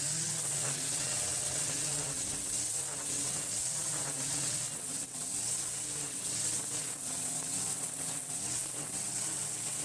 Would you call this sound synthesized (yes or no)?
yes